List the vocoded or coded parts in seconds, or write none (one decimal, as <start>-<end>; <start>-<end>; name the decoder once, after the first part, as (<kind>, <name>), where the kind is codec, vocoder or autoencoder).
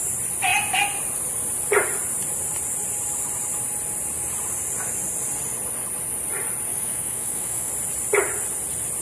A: 6.7-7.7 (autoencoder, DAC-VAE)